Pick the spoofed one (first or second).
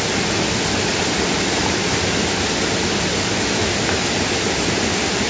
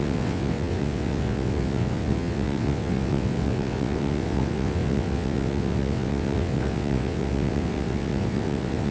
second